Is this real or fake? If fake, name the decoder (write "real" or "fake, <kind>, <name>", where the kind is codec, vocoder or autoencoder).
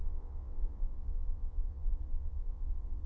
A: fake, vocoder, WaveNeXt